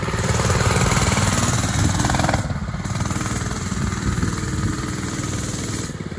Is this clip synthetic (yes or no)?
yes